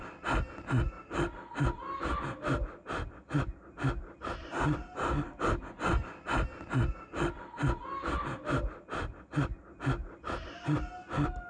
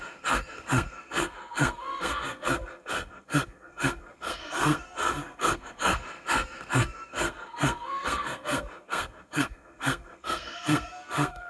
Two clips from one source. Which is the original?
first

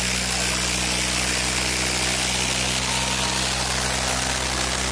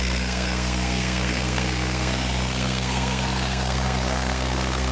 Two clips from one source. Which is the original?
first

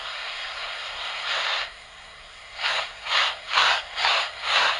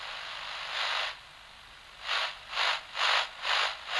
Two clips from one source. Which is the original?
second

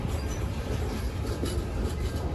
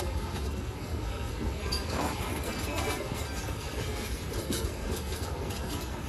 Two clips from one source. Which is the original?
first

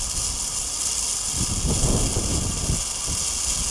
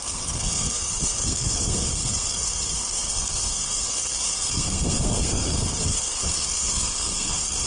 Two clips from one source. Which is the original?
first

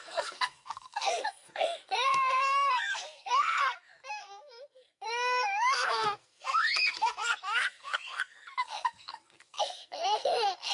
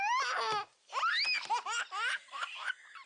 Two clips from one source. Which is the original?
second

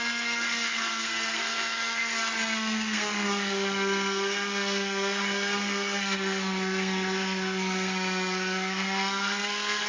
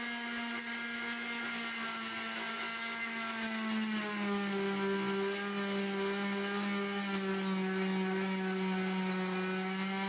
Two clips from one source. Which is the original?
second